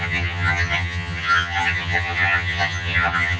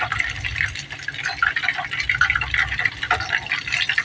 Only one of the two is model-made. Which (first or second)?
first